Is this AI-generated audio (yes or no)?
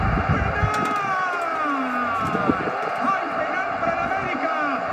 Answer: no